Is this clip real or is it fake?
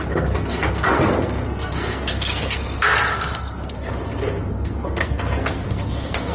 fake